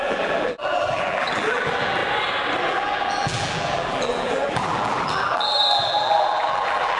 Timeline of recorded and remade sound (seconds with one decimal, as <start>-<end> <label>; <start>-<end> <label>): 0.0-2.0 remade; 2.0-2.7 recorded; 2.7-7.0 remade